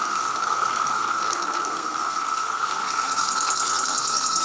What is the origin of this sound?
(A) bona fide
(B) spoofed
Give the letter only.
B